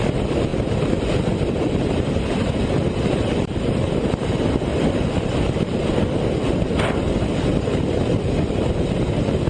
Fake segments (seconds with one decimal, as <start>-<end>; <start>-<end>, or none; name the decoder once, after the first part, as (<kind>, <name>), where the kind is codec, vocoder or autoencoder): 0.0-0.5 (vocoder, BigVGAN v2); 1.5-9.5